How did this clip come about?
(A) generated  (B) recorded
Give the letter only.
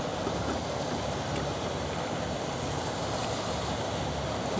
B